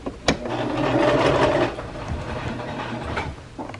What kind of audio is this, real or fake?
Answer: real